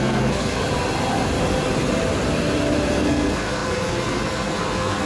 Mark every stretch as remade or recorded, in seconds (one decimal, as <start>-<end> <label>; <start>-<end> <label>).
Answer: 0.0-0.6 remade; 0.6-2.9 recorded; 2.9-5.1 remade

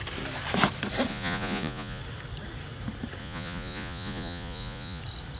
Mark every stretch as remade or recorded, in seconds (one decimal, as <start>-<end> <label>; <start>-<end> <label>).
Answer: 0.0-1.1 recorded; 1.1-2.0 remade; 2.0-3.2 recorded; 3.2-5.0 remade; 5.0-5.4 recorded